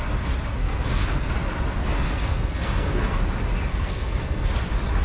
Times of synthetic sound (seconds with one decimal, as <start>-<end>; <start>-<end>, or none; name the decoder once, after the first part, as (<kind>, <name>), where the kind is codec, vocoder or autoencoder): 0.6-1.3 (codec, SNAC); 1.8-3.2; 3.7-4.5